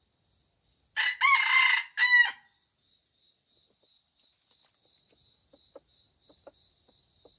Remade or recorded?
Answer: recorded